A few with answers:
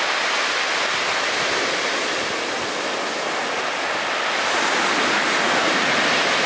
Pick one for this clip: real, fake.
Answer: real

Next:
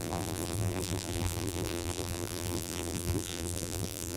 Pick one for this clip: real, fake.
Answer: fake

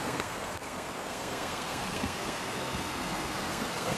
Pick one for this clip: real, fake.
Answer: fake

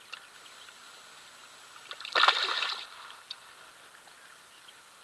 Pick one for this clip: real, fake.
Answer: real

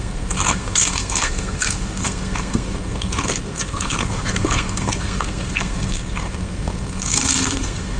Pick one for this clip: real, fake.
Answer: fake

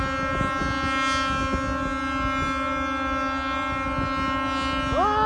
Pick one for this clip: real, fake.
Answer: real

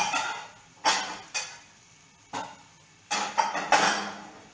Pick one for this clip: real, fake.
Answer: real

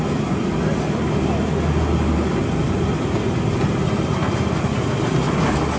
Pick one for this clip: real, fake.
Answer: real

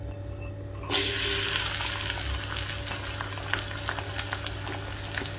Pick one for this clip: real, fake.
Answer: real